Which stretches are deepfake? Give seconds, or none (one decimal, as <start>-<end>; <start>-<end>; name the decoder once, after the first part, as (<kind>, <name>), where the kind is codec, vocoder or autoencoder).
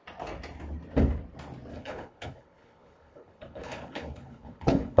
1.7-5.0 (codec, HILCodec)